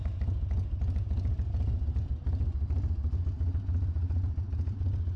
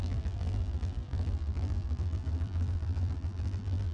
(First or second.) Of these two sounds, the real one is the first